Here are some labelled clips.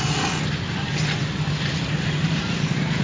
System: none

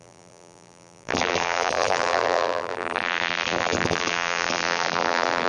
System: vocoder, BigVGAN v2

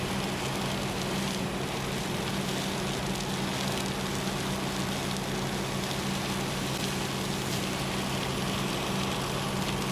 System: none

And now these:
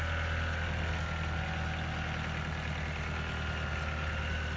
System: none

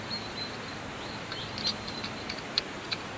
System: vocoder, BigVGAN v2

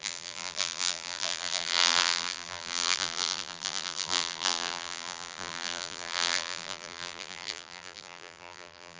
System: vocoder, BigVGAN v2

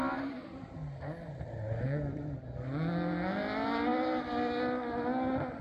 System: none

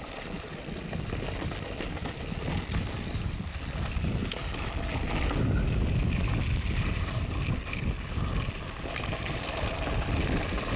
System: none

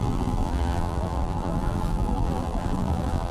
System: vocoder, BigVGAN v2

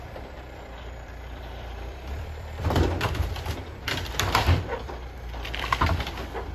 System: vocoder, BigVGAN v2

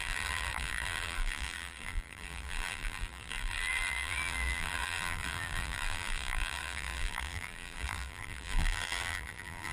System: vocoder, BigVGAN v2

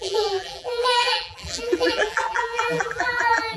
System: vocoder, BigVGAN v2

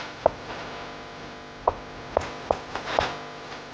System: none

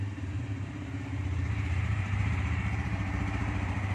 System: vocoder, BigVGAN v2